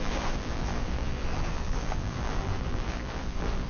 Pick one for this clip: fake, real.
fake